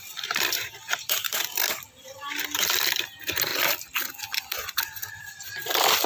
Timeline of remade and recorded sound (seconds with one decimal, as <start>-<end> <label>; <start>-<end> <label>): 0.0-3.5 remade; 3.5-5.2 recorded; 5.2-6.1 remade